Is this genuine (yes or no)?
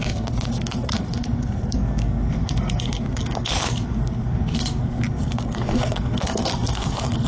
no